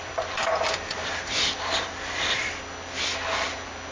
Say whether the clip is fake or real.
real